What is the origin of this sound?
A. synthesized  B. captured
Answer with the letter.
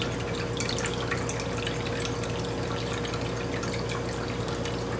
B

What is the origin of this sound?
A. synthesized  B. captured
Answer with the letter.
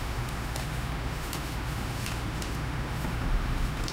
A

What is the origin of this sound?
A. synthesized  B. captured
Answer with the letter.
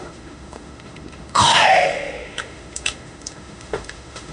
A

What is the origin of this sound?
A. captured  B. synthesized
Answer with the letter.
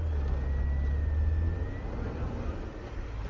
A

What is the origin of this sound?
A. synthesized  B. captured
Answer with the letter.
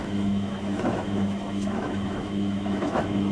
A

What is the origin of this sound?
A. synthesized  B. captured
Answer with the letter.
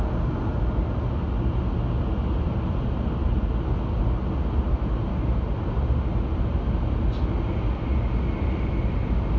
B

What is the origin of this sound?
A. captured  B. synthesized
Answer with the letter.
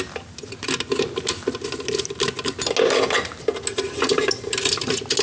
A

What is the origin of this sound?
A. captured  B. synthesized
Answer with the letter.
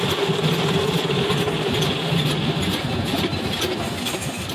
A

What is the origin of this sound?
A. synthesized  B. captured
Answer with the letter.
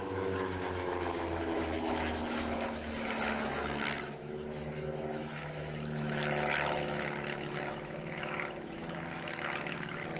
A